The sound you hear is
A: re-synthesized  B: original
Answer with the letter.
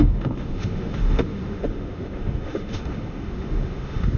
A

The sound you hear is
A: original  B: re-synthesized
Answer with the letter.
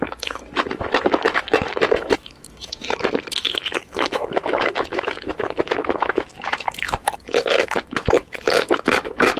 B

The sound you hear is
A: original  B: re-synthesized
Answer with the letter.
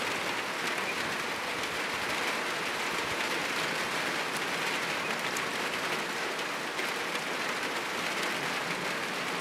A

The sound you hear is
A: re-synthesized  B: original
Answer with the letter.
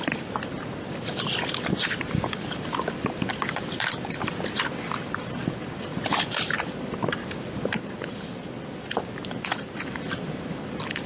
B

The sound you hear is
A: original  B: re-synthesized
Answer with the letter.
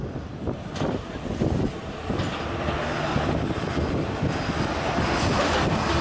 B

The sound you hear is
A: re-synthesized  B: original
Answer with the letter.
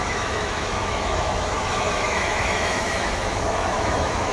A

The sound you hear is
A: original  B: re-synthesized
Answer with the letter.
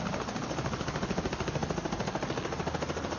A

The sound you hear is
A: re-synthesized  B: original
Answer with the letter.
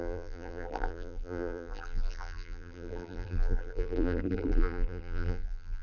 A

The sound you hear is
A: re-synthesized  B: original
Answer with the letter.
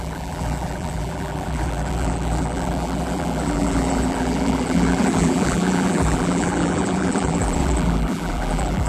A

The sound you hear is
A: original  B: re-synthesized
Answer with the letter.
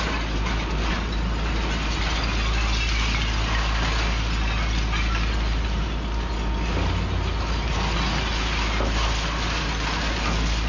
A